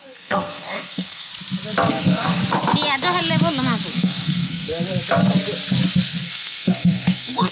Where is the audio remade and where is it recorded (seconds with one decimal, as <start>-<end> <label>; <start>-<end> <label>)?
0.0-1.3 remade; 1.3-1.9 recorded; 1.9-2.4 remade; 2.4-3.9 recorded; 3.9-4.7 remade; 4.7-6.2 recorded; 6.2-7.5 remade